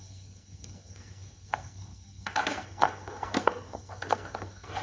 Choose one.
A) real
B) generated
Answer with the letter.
B